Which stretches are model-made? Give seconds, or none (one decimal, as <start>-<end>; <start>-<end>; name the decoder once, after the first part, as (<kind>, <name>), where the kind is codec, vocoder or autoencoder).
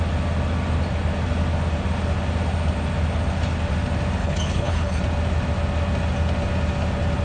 4.2-5.0 (codec, HILCodec)